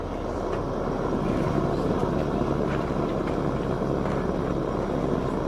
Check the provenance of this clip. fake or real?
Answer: real